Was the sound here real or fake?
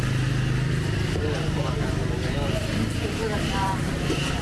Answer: real